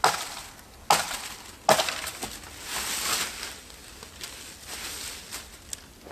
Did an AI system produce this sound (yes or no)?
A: no